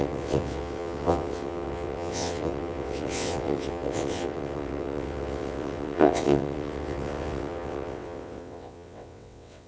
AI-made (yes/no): yes